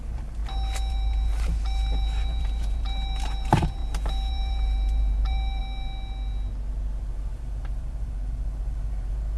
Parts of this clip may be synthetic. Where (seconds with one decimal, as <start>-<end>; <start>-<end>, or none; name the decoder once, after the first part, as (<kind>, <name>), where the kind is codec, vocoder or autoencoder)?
0.0-0.4 (vocoder, BigVGAN v2); 0.9-3.8; 4.3-5.6; 7.1-9.4